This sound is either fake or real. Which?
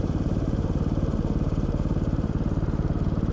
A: fake